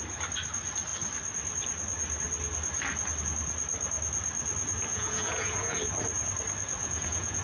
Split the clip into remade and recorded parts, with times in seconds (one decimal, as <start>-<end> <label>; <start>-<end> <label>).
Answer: 0.0-4.9 recorded; 4.9-5.8 remade; 5.8-6.8 recorded; 6.8-7.4 remade